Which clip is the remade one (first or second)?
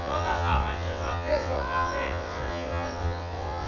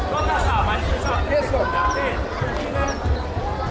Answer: first